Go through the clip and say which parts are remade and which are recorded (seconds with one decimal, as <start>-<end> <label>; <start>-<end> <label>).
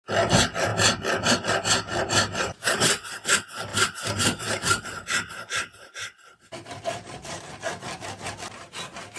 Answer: 0.0-1.9 recorded; 1.9-3.1 remade; 3.1-3.7 recorded; 3.7-7.4 remade; 7.4-9.2 recorded